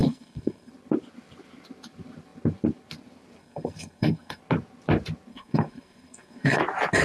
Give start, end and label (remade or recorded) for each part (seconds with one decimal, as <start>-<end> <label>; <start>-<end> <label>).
0.0-0.7 remade; 0.7-3.4 recorded; 3.4-4.4 remade; 4.4-5.3 recorded; 5.3-6.6 remade; 6.6-7.0 recorded

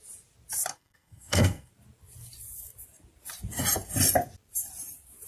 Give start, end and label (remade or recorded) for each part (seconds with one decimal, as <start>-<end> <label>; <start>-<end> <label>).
0.0-0.7 recorded; 0.7-1.7 remade; 1.7-5.3 recorded

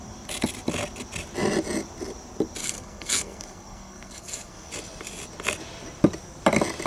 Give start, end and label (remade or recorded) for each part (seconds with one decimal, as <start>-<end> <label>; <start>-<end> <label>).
0.0-2.6 recorded; 2.6-4.7 remade; 4.7-6.9 recorded

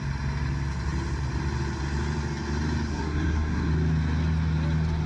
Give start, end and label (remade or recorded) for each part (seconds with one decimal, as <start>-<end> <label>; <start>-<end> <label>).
0.0-2.9 recorded; 2.9-3.7 remade; 3.7-5.1 recorded

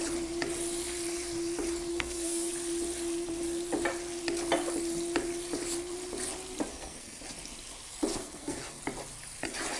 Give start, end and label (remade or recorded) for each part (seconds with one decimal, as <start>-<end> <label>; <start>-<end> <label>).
0.0-1.9 recorded; 1.9-2.5 remade; 2.5-6.7 recorded; 6.7-7.2 remade; 7.2-8.1 recorded; 8.1-8.8 remade; 8.8-9.8 recorded